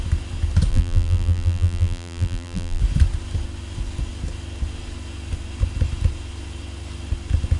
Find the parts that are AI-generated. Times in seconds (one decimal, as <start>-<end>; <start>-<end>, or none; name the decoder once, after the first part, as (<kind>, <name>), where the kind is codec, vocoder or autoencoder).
0.7-2.8 (vocoder, BigVGAN v2)